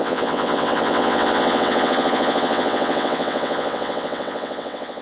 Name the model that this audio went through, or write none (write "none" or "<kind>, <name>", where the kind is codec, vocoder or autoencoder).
vocoder, WaveNeXt